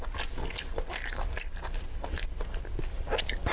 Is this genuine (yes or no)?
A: yes